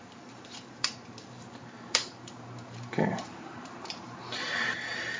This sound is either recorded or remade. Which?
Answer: remade